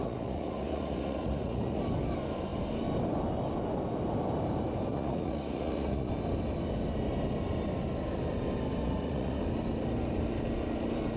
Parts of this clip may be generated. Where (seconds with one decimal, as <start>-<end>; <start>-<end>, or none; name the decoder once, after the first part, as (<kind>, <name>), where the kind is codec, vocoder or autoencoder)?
0.0-1.8 (vocoder, Vocos); 4.9-6.1; 8.8-9.4